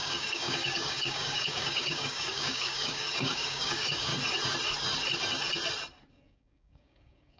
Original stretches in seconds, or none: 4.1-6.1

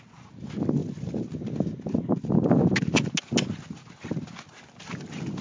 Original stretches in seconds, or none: 0.0-5.4

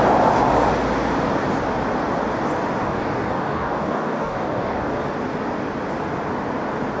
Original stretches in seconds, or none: 0.0-2.8; 4.9-7.0